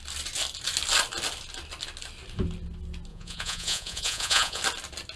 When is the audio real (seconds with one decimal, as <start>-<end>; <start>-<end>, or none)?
0.0-3.1; 4.6-5.2

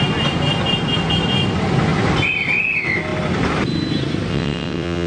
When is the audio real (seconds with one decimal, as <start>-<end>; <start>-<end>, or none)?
0.0-4.3

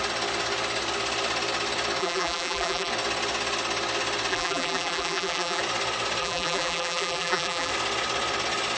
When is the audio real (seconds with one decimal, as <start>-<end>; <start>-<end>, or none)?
0.0-2.0; 2.9-4.3; 5.6-6.2; 7.7-8.8

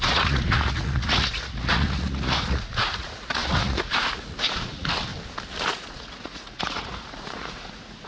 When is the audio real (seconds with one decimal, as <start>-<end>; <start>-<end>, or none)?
5.1-5.7

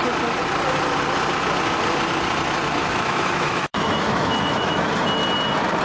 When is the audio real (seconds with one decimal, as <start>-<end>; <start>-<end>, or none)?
0.0-2.8; 4.9-5.8

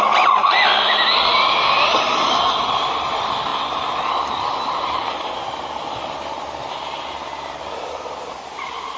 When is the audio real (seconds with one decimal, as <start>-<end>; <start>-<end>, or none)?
0.0-9.0

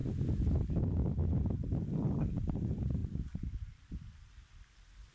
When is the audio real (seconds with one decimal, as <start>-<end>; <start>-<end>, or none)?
0.0-5.1